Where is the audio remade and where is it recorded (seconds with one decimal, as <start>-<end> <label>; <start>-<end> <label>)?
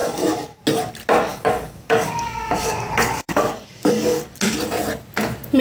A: 0.0-0.6 remade; 0.6-1.3 recorded; 1.3-4.4 remade; 4.4-5.6 recorded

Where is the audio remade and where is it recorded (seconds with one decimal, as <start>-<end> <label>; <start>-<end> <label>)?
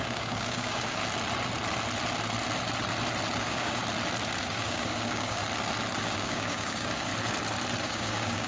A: 0.0-1.0 remade; 1.0-3.4 recorded; 3.4-3.8 remade; 3.8-4.4 recorded; 4.4-5.4 remade; 5.4-6.0 recorded; 6.0-7.1 remade; 7.1-7.8 recorded; 7.8-8.5 remade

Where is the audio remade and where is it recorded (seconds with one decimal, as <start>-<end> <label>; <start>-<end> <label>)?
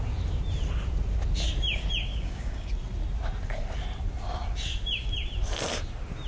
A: 0.0-2.1 recorded; 2.1-2.7 remade; 2.7-6.3 recorded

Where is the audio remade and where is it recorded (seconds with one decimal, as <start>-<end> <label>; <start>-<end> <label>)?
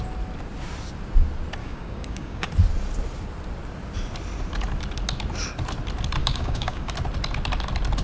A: 0.0-1.6 recorded; 1.6-2.5 remade; 2.5-6.2 recorded; 6.2-6.9 remade; 6.9-8.0 recorded